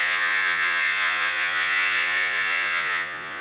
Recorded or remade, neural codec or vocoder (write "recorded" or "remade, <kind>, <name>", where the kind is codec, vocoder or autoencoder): remade, vocoder, Vocos